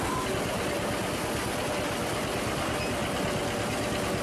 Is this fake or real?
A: real